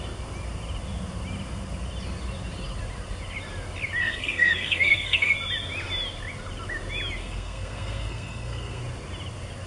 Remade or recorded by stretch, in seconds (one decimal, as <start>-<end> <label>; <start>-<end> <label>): 0.0-4.0 recorded; 4.0-5.3 remade; 5.3-7.2 recorded; 7.2-8.8 remade; 8.8-9.7 recorded